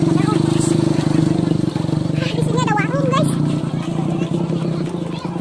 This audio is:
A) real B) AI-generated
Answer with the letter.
A